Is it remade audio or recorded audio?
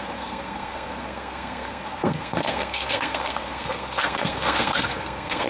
remade